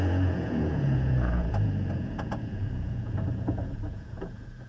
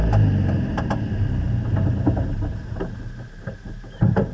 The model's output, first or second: first